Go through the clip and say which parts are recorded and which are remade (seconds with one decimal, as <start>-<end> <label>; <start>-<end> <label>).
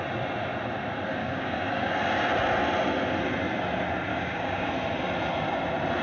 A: 0.0-1.2 recorded; 1.2-1.9 remade; 1.9-4.1 recorded; 4.1-4.7 remade; 4.7-6.0 recorded